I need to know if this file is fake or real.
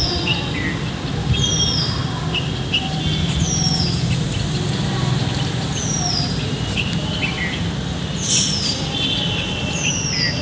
real